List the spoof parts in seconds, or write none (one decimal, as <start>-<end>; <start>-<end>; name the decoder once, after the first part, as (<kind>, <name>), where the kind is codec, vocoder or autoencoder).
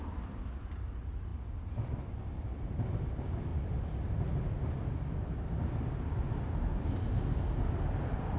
0.0-0.7 (vocoder, BigVGAN v2); 1.3-3.0